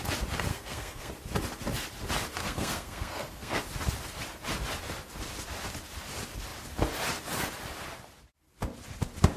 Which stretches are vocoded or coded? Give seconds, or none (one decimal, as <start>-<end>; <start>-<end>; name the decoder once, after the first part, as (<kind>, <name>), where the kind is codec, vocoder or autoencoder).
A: 0.5-1.1 (codec, SNAC); 2.4-3.6